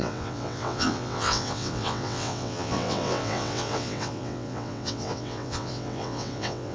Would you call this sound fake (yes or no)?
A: yes